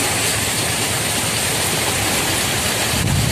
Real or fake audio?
real